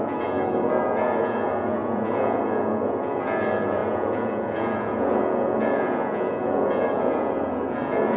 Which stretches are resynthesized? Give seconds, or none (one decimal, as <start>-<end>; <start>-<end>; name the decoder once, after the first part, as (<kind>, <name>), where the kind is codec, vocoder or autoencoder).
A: 0.0-8.2 (vocoder, Vocos)